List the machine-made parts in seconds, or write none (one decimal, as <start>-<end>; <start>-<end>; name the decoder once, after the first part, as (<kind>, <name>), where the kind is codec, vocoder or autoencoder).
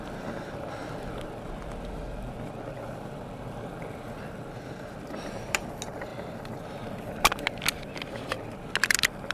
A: none